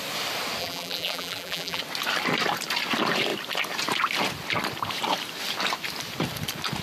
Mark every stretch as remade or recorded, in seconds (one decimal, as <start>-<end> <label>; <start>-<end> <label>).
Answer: 0.0-0.6 recorded; 0.6-1.8 remade; 1.8-6.8 recorded